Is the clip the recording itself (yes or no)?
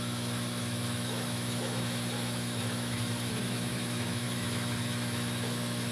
no